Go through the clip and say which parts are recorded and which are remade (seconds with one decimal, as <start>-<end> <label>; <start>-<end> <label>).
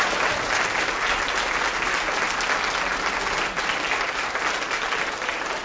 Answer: 0.0-5.6 recorded